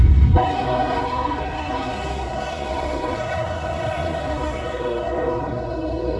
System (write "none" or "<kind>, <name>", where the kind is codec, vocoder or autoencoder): codec, SNAC